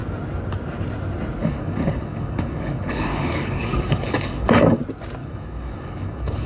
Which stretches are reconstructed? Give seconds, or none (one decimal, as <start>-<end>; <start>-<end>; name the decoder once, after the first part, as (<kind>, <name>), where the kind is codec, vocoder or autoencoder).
1.4-4.8 (codec, DAC); 5.2-6.5